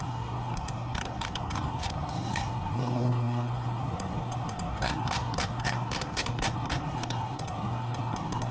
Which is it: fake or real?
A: fake